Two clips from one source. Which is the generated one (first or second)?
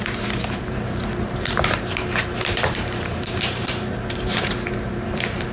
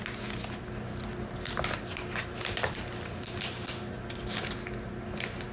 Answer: first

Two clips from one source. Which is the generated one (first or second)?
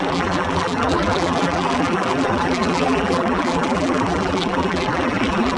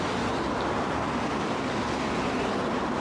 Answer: first